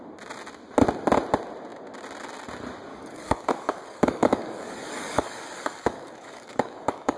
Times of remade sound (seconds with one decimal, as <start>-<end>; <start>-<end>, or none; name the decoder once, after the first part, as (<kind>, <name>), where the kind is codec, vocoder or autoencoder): 2.9-7.2 (codec, DAC)